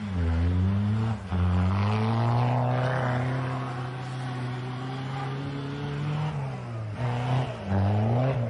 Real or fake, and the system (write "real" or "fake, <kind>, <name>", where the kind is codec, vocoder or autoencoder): real